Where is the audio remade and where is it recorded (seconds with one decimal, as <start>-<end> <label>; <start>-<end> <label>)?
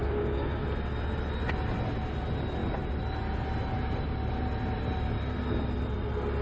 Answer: 0.0-0.6 remade; 0.6-6.4 recorded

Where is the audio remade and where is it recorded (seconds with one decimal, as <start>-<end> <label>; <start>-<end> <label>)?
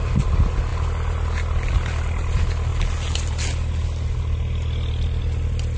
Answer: 0.0-5.8 recorded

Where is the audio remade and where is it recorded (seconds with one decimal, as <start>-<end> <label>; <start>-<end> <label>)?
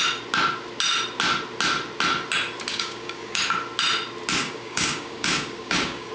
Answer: 0.0-2.7 recorded; 2.7-3.4 remade; 3.4-4.4 recorded; 4.4-6.1 remade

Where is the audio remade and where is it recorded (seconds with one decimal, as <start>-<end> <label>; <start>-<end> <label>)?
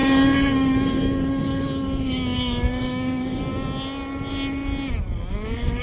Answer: 0.0-3.5 remade; 3.5-5.3 recorded; 5.3-5.8 remade